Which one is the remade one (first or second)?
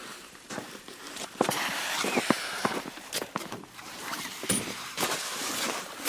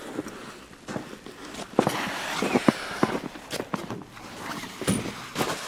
first